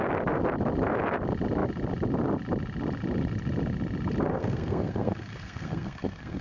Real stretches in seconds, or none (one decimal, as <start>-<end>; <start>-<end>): 0.0-4.3